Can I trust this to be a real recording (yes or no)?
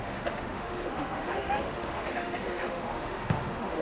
no